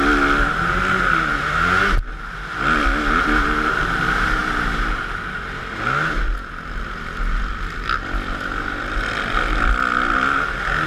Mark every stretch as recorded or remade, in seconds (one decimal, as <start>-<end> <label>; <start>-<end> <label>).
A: 0.0-10.9 recorded